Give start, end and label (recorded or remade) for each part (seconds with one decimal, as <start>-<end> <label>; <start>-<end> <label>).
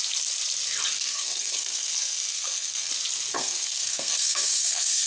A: 0.0-0.9 recorded; 0.9-2.9 remade; 2.9-3.3 recorded; 3.3-5.1 remade